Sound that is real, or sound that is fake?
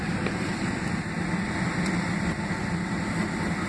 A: real